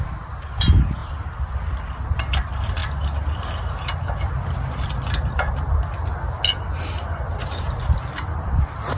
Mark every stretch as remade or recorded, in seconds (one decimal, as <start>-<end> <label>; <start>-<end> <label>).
0.0-2.8 remade; 2.8-7.6 recorded; 7.6-9.0 remade